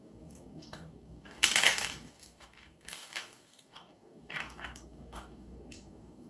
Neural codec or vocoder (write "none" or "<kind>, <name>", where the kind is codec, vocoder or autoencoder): codec, DAC